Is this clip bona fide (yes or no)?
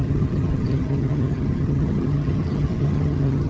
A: no